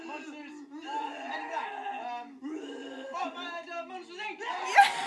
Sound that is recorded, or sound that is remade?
recorded